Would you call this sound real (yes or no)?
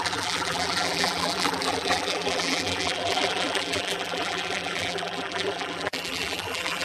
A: no